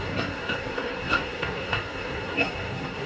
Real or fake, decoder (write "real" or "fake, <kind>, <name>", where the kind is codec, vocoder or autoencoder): fake, codec, SNAC